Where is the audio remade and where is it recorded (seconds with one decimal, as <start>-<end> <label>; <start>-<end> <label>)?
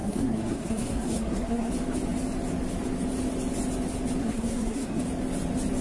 0.0-1.7 remade; 1.7-4.2 recorded; 4.2-5.0 remade; 5.0-5.8 recorded